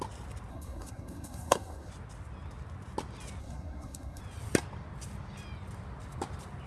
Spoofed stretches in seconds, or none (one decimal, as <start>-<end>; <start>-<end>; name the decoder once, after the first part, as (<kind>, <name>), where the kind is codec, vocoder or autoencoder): 0.5-1.9 (codec, SNAC); 3.4-4.2